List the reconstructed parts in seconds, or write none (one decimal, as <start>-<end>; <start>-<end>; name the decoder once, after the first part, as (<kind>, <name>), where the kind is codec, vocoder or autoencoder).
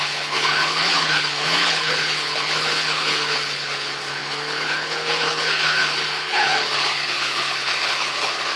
0.0-8.6 (codec, HILCodec)